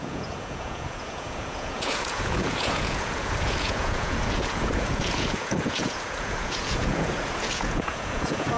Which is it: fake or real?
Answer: fake